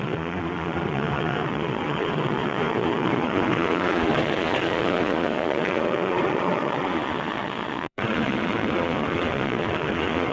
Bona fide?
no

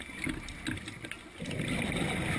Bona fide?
yes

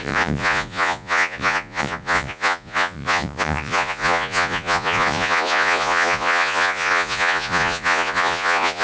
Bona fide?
no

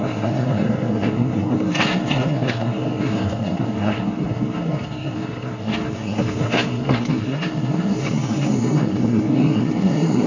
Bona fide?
no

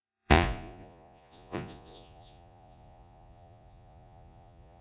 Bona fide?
no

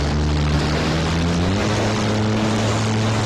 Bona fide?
yes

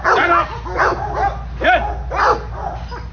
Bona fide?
yes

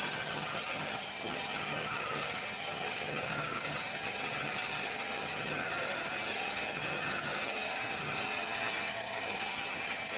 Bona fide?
no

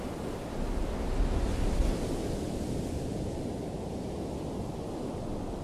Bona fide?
yes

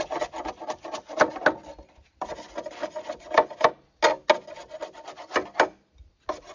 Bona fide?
yes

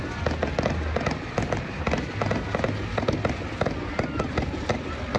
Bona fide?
yes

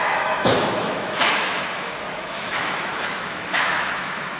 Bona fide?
no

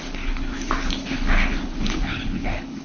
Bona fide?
no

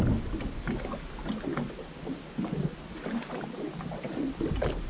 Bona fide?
yes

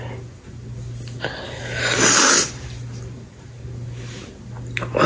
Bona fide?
yes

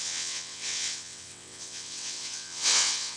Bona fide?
no